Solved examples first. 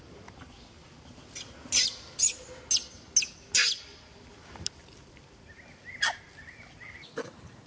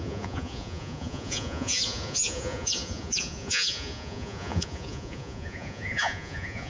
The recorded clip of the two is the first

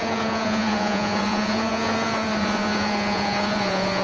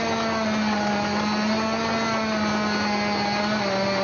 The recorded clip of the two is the second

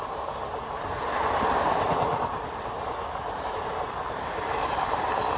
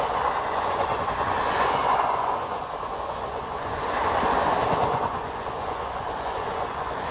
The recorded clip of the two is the first